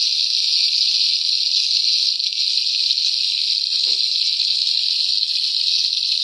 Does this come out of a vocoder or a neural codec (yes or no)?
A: no